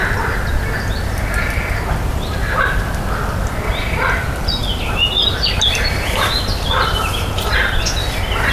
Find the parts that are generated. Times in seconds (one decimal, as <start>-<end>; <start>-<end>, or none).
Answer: none